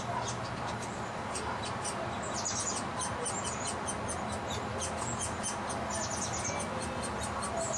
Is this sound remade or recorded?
recorded